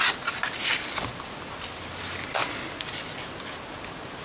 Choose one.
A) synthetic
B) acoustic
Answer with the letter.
B